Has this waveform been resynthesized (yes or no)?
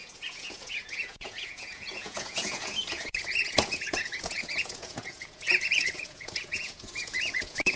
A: yes